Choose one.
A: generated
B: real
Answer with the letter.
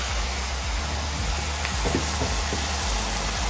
B